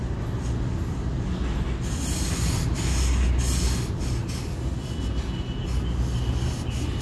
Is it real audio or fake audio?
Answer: real